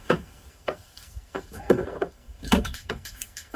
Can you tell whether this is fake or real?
fake